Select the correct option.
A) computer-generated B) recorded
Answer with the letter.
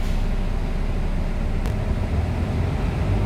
B